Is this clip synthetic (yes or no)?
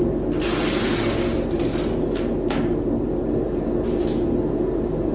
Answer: no